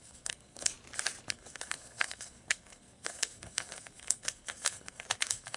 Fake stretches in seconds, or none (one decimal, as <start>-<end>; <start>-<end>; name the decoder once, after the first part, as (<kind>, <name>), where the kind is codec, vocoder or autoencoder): 0.0-0.7 (codec, SNAC); 1.3-5.6